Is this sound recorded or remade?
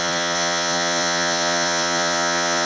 remade